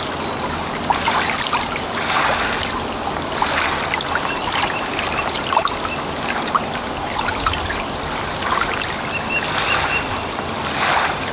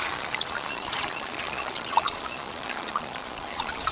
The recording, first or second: first